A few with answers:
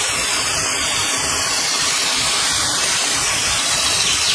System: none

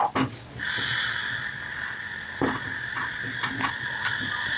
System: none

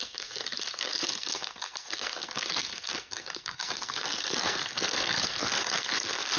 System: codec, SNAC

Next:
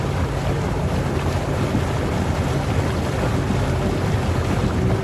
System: none